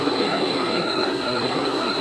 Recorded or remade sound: remade